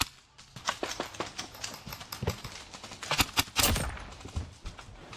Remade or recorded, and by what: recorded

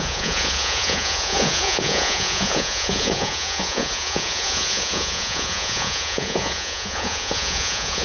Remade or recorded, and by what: remade, vocoder, Vocos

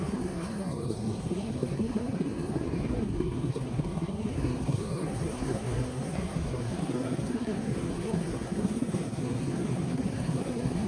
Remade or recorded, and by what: remade, codec, SNAC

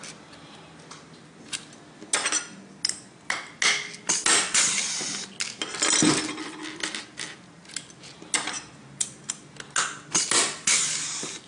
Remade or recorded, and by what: recorded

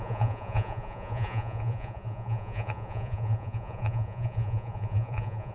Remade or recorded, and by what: remade, vocoder, Vocos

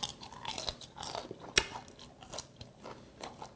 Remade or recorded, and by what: recorded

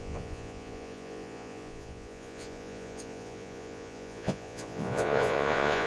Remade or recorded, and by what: remade, vocoder, Vocos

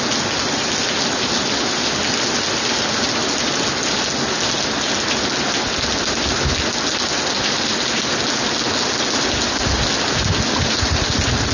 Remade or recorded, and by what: recorded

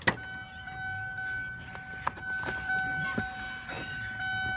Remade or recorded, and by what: recorded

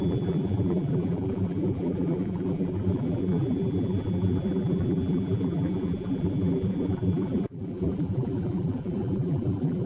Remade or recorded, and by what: remade, vocoder, BigVGAN v2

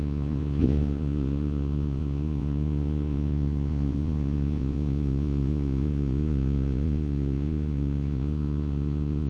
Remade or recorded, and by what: remade, vocoder, Vocos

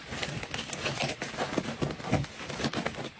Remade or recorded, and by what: recorded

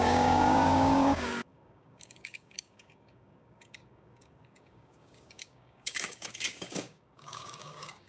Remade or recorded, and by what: remade, codec, DAC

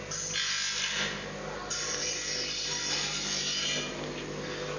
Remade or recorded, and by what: recorded